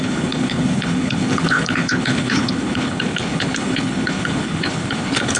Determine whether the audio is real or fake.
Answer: fake